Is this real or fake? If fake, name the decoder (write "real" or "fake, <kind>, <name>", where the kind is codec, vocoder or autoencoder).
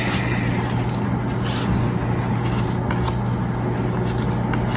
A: real